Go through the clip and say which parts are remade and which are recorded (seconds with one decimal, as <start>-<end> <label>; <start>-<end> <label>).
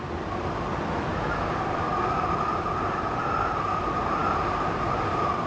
0.0-1.1 recorded; 1.1-1.9 remade; 1.9-2.5 recorded; 2.5-3.8 remade; 3.8-4.2 recorded; 4.2-5.5 remade